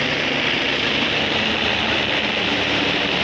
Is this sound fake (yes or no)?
no